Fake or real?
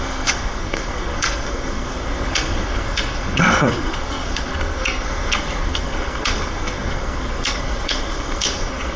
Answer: fake